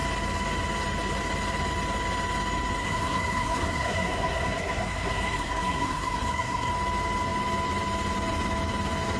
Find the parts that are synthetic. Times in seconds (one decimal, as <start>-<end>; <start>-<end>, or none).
2.8-6.7